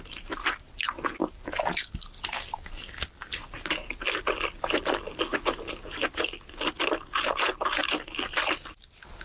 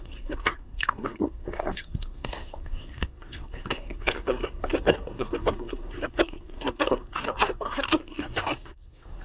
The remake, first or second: second